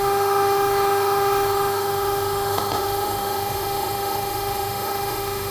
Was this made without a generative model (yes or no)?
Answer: no